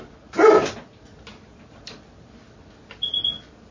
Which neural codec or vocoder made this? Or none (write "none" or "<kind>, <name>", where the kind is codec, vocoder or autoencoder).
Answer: none